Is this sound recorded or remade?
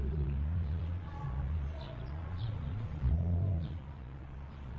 remade